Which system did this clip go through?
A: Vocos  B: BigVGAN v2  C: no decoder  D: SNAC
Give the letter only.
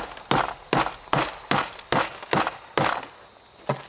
C